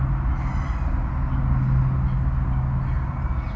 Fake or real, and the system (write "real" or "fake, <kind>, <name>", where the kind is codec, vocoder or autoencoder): real